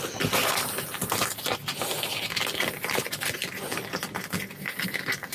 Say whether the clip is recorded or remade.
recorded